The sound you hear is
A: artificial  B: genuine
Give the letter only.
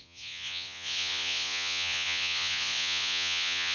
A